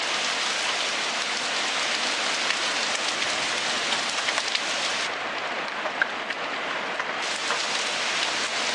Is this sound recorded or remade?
recorded